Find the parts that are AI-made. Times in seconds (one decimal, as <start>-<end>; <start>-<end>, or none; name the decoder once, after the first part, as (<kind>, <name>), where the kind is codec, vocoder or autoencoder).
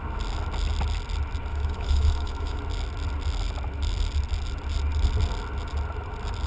1.5-2.6 (autoencoder, DAC-VAE)